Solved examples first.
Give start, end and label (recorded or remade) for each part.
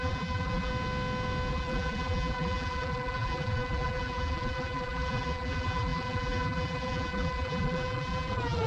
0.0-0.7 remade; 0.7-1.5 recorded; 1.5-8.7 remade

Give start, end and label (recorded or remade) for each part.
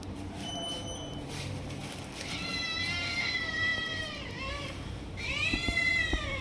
0.0-1.8 remade; 1.8-2.5 recorded; 2.5-6.4 remade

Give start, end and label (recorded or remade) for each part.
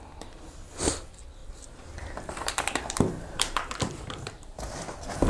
0.0-1.4 recorded; 1.4-4.6 remade; 4.6-5.3 recorded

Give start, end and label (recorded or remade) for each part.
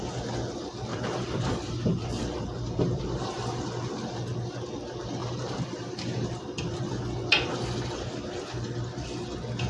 0.0-0.9 recorded; 0.9-3.0 remade; 3.0-5.2 recorded; 5.2-6.9 remade; 6.9-9.7 recorded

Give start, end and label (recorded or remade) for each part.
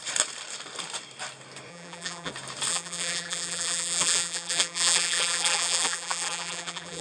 0.0-1.7 recorded; 1.7-2.3 remade; 2.3-2.7 recorded; 2.7-7.0 remade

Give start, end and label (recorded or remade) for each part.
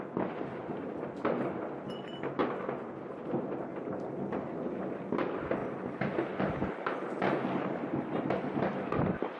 0.0-5.6 recorded; 5.6-8.2 remade; 8.2-9.4 recorded